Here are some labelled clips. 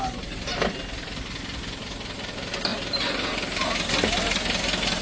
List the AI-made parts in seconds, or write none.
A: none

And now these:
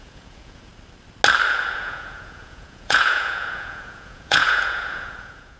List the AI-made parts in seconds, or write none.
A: 0.0-0.7 (vocoder, Vocos); 1.5-5.6

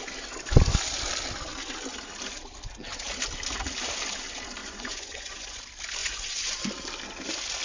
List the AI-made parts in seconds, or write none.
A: 4.6-5.6 (vocoder, Vocos); 6.0-6.7